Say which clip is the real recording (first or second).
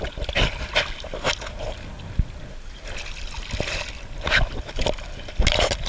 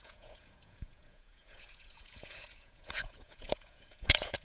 first